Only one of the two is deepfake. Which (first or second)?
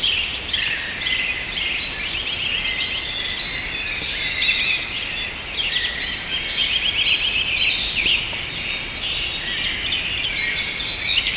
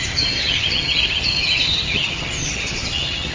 second